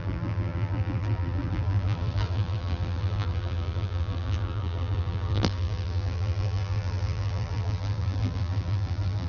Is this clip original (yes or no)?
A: no